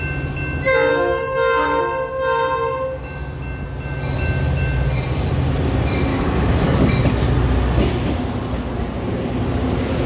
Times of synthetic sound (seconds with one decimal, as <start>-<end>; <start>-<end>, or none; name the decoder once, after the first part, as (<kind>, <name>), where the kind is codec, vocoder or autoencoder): 0.9-1.8 (codec, DAC); 6.1-6.9